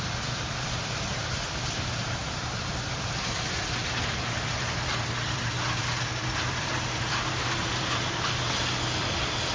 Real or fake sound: fake